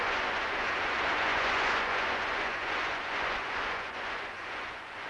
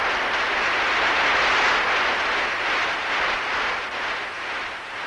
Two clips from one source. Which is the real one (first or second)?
second